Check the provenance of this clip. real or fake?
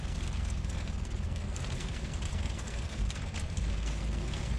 fake